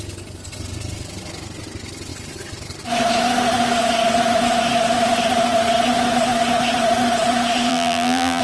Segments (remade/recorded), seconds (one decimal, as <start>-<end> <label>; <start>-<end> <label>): 0.0-7.7 recorded; 7.7-8.4 remade